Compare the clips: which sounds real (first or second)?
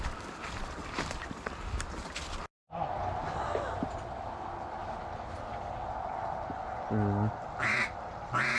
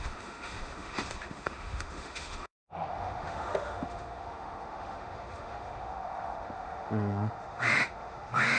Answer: first